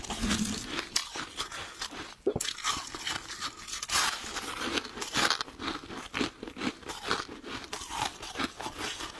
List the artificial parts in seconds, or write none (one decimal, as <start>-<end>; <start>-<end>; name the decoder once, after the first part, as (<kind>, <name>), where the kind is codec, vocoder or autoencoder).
none